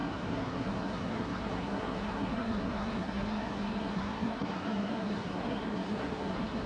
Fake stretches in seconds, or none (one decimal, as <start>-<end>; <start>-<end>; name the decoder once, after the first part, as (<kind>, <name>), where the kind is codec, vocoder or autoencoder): 0.0-6.7 (codec, SNAC)